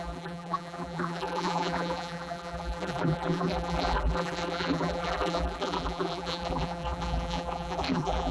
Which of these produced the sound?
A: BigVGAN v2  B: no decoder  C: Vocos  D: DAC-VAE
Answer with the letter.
A